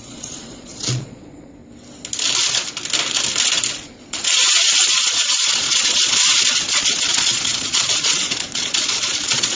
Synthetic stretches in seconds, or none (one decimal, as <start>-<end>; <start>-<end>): 0.0-1.6; 3.7-9.5

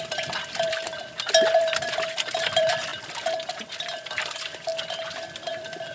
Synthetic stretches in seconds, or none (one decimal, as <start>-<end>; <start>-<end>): 0.0-0.9; 1.6-2.9; 3.7-4.7; 5.5-5.9